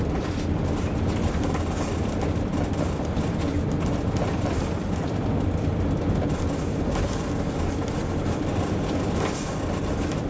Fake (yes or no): no